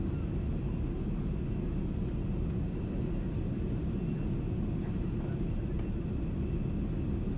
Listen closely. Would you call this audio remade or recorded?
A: recorded